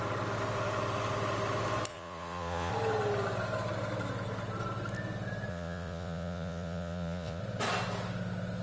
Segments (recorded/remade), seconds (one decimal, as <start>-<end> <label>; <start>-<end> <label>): 0.0-1.9 recorded; 1.9-2.7 remade; 2.7-5.5 recorded; 5.5-7.4 remade; 7.4-8.6 recorded